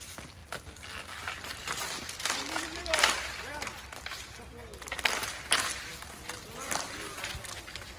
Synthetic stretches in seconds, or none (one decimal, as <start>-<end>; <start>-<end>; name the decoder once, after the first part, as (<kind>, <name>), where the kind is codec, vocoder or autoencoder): none